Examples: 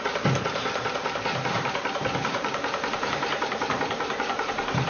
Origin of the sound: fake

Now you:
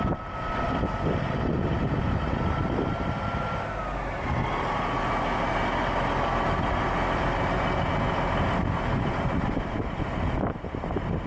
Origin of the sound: real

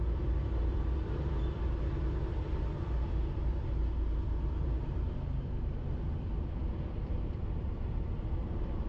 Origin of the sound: fake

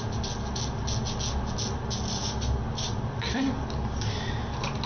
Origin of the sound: real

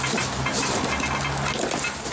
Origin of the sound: real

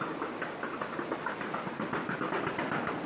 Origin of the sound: real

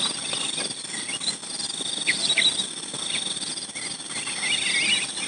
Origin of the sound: real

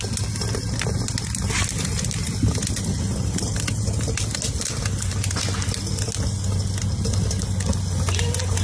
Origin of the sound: real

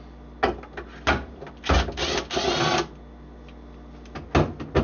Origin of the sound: real